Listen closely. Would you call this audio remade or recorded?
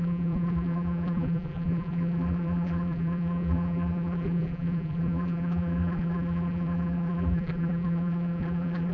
remade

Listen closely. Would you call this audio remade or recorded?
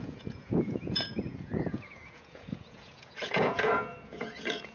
remade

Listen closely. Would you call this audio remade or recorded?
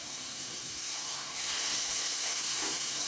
remade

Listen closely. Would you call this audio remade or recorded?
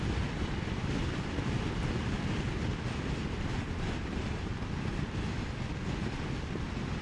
recorded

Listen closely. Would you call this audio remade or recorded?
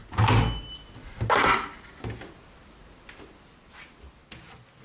recorded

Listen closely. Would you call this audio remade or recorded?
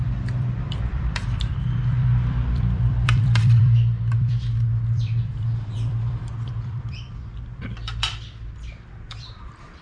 remade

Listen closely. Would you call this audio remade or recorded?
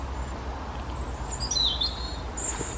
recorded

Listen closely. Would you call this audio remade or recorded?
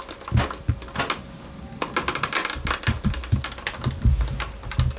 recorded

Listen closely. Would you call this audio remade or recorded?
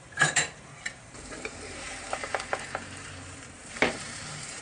remade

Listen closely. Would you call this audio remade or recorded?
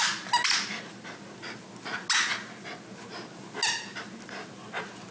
recorded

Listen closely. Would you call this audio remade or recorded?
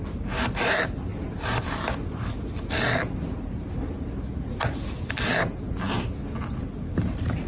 recorded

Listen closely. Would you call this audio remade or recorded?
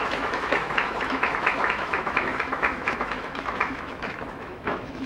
remade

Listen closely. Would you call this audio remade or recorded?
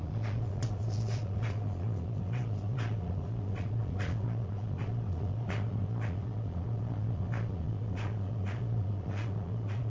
remade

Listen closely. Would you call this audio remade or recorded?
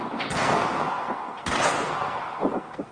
remade